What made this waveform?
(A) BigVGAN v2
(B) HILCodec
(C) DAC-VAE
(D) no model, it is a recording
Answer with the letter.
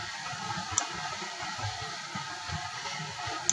D